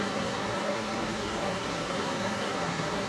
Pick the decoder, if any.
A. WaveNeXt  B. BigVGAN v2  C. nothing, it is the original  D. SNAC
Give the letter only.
D